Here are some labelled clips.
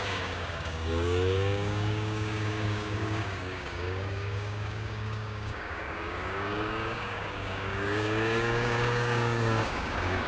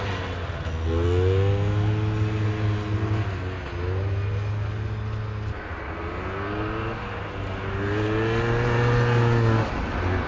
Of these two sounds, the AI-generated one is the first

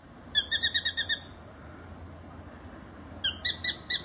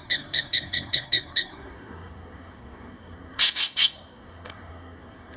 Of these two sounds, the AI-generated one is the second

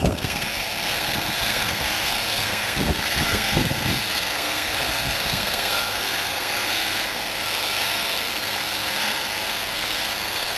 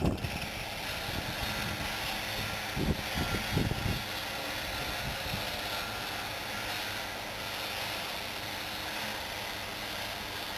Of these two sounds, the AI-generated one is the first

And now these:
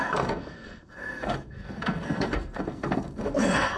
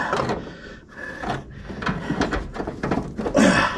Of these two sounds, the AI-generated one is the first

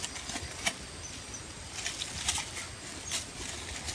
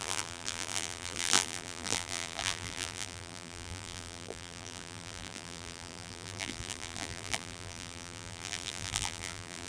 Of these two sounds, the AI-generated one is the second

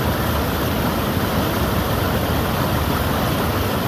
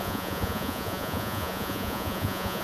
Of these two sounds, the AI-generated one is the second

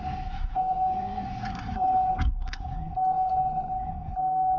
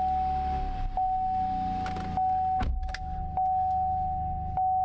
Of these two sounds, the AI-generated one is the first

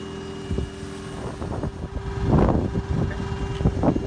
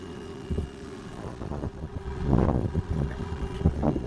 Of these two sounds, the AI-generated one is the second